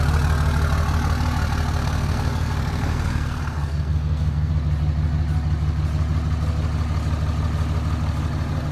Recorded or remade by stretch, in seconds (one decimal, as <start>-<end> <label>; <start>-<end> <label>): 0.0-1.8 recorded; 1.8-4.5 remade; 4.5-8.7 recorded